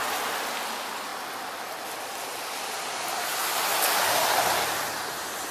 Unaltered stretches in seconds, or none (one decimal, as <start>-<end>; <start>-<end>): 0.0-5.5